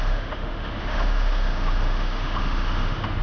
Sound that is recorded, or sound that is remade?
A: remade